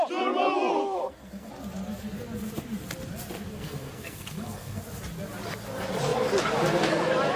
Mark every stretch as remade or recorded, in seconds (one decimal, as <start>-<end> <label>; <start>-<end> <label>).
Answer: 0.0-0.8 recorded; 0.8-1.5 remade; 1.5-3.5 recorded; 3.5-4.8 remade; 4.8-7.4 recorded